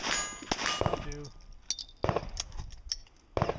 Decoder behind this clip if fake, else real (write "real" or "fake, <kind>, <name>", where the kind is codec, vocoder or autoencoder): real